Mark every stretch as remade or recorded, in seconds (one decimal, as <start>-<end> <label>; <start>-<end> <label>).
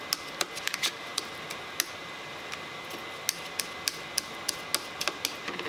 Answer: 0.0-5.7 recorded